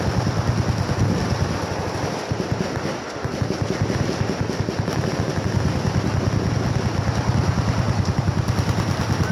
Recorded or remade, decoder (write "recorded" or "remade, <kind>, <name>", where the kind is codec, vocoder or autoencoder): recorded